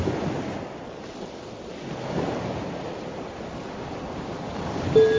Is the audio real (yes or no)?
yes